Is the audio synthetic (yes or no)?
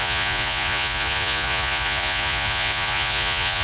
yes